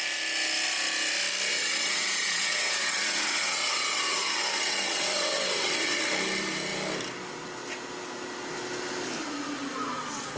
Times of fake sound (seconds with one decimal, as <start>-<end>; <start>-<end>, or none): 1.5-6.0